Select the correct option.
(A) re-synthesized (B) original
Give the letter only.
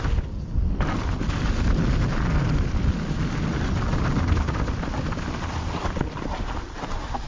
B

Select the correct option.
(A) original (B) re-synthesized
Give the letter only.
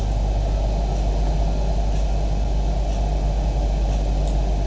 A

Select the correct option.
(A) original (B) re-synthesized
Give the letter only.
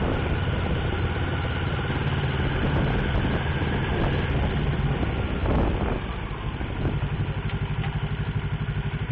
A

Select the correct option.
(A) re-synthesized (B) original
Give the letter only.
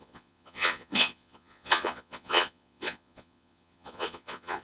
A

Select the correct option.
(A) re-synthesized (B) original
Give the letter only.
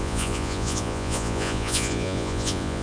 A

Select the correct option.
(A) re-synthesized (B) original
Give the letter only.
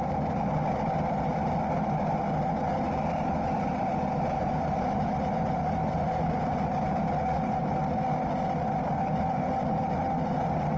B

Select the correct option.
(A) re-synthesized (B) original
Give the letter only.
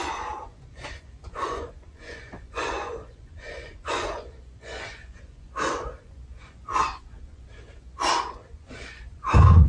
A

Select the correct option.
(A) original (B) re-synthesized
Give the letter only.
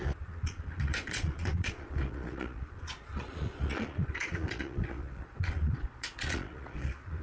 B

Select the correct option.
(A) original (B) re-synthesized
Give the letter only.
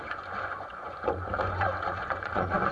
B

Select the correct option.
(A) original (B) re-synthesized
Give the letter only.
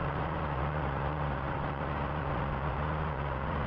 B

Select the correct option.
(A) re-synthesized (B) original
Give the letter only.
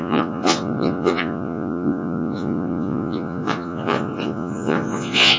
A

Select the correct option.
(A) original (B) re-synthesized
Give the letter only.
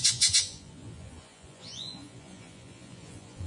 B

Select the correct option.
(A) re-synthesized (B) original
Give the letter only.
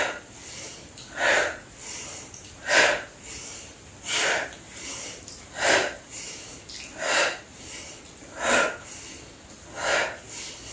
B